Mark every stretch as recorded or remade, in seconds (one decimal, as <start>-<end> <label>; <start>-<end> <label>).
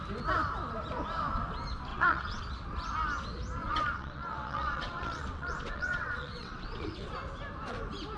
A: 0.0-1.9 recorded; 1.9-2.4 remade; 2.4-3.6 recorded; 3.6-7.1 remade; 7.1-8.2 recorded